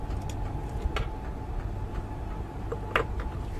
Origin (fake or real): real